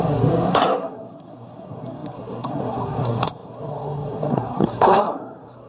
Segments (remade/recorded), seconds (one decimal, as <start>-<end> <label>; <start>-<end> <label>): 0.0-5.7 remade